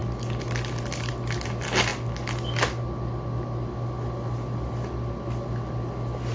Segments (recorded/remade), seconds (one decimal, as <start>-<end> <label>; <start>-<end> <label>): 0.0-6.3 recorded